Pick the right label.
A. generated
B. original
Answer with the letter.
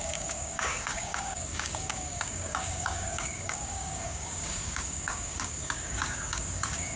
A